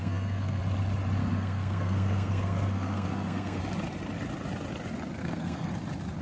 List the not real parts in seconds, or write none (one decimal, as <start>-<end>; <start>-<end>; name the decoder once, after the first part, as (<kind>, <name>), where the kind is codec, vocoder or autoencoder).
0.0-0.6 (codec, SNAC); 1.2-3.6; 5.2-5.7